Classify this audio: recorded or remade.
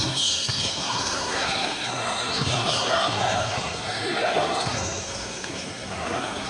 remade